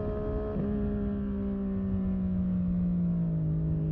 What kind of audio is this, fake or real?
real